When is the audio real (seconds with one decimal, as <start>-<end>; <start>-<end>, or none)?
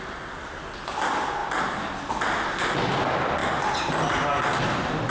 0.0-5.1